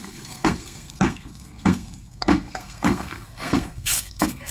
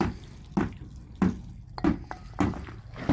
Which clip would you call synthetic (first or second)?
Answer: first